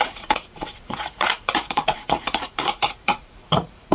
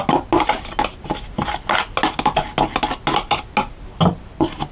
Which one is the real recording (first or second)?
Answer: second